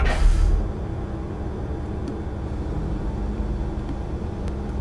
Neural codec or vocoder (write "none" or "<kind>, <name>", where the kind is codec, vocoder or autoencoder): none